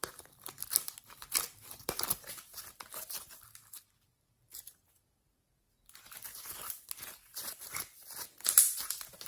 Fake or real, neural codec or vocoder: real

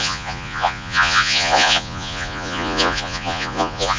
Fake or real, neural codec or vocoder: fake, vocoder, Vocos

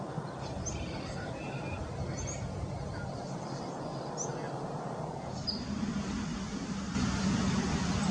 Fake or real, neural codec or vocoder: real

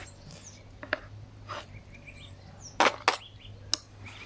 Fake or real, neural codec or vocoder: real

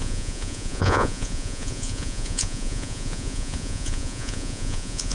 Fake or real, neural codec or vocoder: fake, vocoder, Vocos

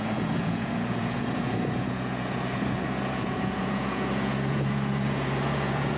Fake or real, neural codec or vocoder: fake, vocoder, Vocos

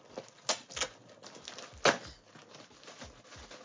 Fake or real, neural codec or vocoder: real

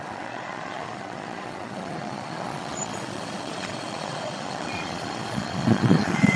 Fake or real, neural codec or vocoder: fake, vocoder, Vocos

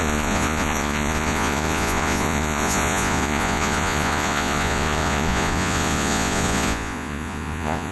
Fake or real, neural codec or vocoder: fake, vocoder, Vocos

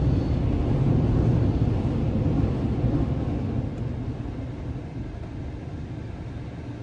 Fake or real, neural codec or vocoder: real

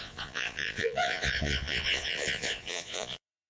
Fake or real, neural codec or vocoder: fake, vocoder, Vocos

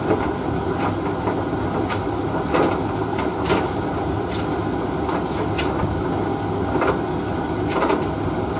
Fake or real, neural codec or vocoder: real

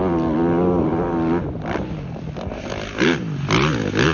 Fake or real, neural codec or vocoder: real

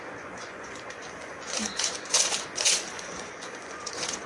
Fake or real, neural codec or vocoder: fake, vocoder, Vocos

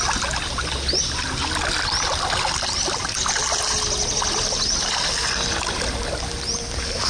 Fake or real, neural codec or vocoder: real